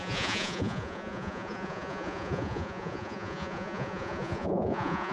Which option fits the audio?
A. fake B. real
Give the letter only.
A